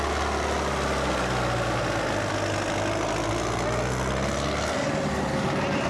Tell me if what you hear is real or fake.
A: real